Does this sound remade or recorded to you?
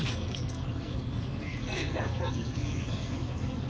remade